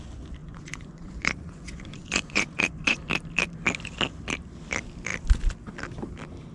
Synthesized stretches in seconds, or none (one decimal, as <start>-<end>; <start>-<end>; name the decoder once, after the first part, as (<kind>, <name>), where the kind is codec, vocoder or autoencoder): 0.4-3.0 (vocoder, Vocos)